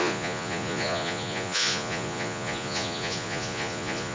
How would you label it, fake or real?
fake